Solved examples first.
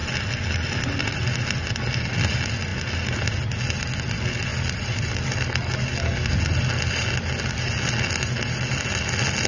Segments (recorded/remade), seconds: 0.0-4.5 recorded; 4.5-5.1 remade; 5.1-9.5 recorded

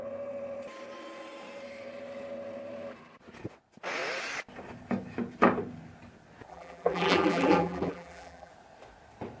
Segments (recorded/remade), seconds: 0.0-6.5 recorded; 6.5-8.5 remade; 8.5-9.4 recorded

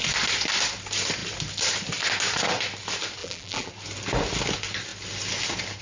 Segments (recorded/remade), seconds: 0.0-3.2 recorded; 3.2-3.7 remade; 3.7-5.8 recorded

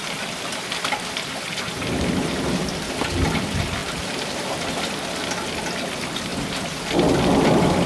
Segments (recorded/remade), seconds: 0.0-3.8 recorded; 3.8-4.9 remade; 4.9-6.3 recorded; 6.3-7.9 remade